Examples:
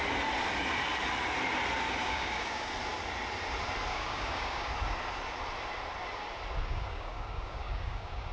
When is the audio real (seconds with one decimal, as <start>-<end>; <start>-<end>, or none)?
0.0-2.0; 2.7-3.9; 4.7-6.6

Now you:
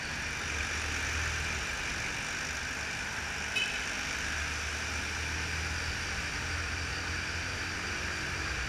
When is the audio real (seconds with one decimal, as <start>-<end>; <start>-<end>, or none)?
0.0-8.7

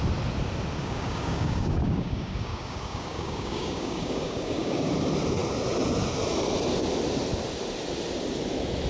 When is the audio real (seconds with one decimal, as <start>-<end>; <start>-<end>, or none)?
0.0-0.8; 4.9-8.9

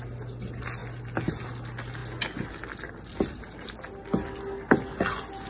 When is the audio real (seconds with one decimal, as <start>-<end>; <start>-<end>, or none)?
0.0-5.5

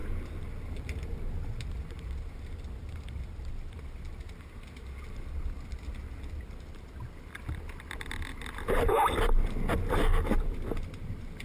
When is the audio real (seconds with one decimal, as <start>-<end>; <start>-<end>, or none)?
0.0-11.4